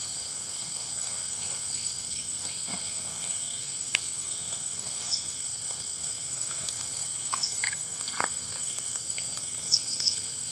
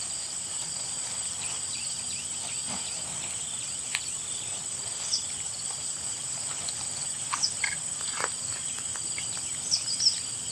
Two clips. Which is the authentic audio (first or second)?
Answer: second